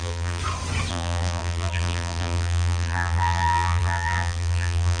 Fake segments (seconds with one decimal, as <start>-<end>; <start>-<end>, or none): 0.0-0.4; 0.9-5.0